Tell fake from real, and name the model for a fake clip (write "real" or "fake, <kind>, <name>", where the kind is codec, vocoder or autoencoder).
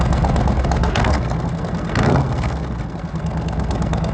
fake, codec, SNAC